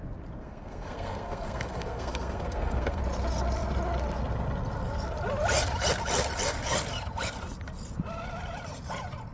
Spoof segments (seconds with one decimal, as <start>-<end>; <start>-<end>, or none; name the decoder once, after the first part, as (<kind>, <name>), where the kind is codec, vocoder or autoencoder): 0.4-3.0 (codec, SNAC)